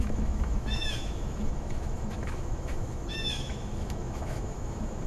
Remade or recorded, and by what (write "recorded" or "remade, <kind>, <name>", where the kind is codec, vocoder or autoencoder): remade, autoencoder, DAC-VAE